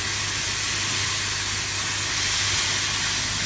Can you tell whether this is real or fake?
real